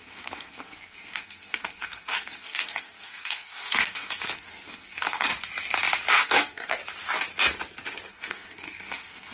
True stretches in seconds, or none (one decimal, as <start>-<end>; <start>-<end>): 5.3-6.1; 6.8-8.1